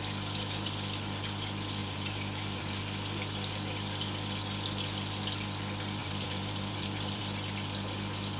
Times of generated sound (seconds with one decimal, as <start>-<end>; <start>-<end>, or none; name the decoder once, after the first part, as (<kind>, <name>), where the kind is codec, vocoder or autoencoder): 1.8-2.8 (vocoder, BigVGAN v2); 6.0-7.2